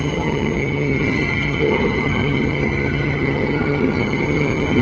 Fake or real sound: fake